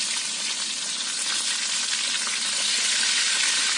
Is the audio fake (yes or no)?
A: no